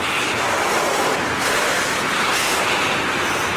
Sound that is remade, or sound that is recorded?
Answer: recorded